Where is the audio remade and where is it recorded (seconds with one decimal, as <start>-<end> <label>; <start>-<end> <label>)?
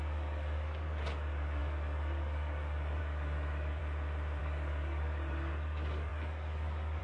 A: 0.0-3.8 remade; 3.8-4.4 recorded; 4.4-7.0 remade